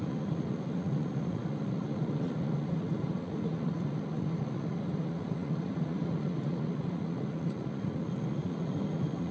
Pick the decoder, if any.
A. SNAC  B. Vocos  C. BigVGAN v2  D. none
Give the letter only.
B